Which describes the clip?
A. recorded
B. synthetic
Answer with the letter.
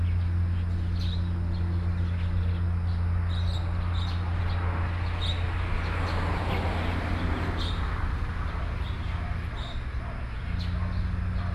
A